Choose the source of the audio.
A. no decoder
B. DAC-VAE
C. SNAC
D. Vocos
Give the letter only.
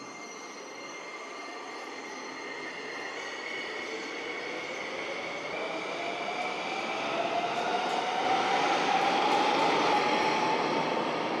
A